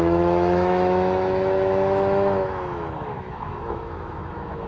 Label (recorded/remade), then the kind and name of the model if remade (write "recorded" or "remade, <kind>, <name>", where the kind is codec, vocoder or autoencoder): remade, autoencoder, DAC-VAE